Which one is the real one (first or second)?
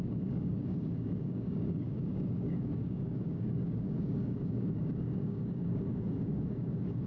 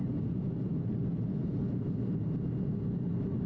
second